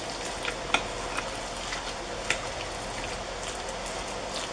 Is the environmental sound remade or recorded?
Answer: recorded